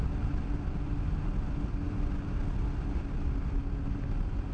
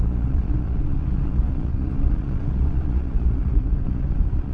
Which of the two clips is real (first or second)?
first